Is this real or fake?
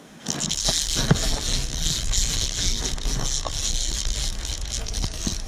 fake